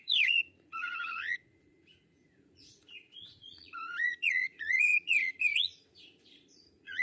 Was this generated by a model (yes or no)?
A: yes